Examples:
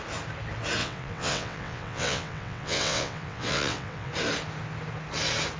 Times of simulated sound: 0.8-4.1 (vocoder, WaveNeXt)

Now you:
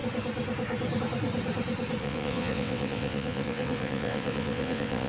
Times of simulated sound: 2.0-5.1 (vocoder, WaveNeXt)

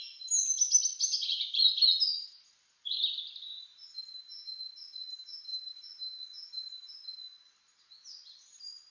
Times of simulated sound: none

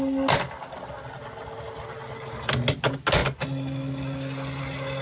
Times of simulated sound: none

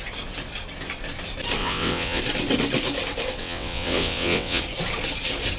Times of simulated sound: 1.6-2.2 (vocoder, WaveNeXt); 3.4-4.6

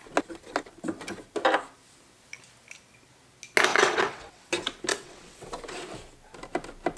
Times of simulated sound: 3.7-4.5 (vocoder, WaveNeXt); 4.9-5.5

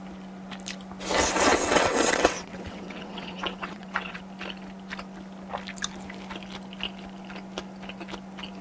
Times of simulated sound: 1.5-4.2 (vocoder, WaveNeXt)